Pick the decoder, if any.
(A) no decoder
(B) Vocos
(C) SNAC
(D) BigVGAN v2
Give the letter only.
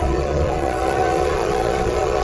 B